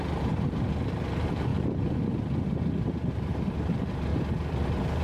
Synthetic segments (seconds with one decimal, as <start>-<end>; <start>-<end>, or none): 0.0-1.5; 3.1-5.0